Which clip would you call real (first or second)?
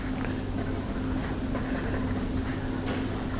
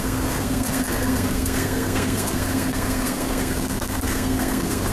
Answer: first